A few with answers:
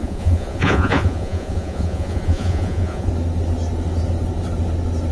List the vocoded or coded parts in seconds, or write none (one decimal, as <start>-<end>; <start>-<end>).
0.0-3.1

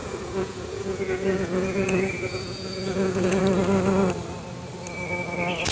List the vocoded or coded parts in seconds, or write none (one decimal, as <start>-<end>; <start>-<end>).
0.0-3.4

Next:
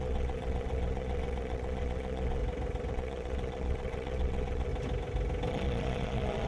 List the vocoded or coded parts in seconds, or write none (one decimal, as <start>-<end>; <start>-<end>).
0.0-2.4; 2.9-4.7; 5.5-6.5

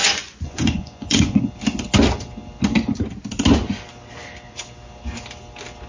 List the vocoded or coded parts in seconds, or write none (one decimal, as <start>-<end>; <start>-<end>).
0.0-1.4

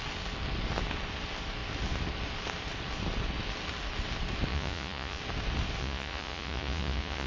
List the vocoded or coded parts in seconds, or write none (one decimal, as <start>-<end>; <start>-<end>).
4.5-5.2; 5.8-7.3